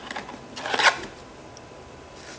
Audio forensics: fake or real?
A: real